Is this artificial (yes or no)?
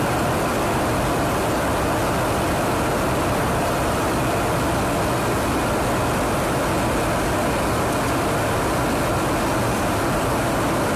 no